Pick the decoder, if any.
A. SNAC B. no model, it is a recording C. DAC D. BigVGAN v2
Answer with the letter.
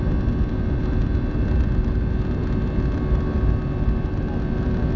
B